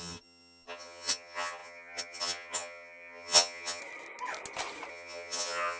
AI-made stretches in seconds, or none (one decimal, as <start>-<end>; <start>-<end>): 0.0-3.8; 4.9-5.8